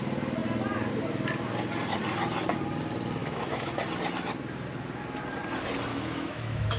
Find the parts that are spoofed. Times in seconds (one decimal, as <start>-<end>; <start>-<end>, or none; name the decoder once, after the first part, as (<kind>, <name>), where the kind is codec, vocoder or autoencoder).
3.2-3.8 (autoencoder, DAC-VAE); 5.9-6.8